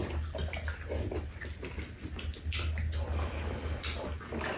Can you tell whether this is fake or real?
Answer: real